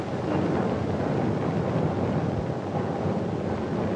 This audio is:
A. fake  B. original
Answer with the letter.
B